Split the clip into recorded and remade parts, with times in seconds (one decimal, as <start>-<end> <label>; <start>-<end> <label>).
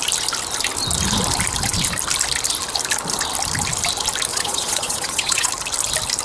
0.0-4.3 recorded; 4.3-5.5 remade; 5.5-6.2 recorded